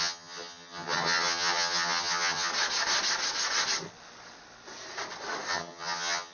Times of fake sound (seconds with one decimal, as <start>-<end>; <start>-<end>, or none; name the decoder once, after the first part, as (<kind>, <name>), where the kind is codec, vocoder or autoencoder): 0.0-2.5 (vocoder, HiFi-GAN); 5.5-6.3